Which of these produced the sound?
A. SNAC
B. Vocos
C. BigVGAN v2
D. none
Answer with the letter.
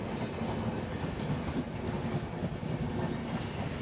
D